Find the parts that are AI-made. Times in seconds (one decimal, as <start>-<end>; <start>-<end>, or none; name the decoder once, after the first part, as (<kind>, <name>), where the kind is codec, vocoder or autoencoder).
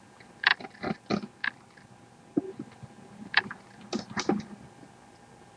none